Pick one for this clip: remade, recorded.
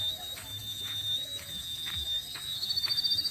remade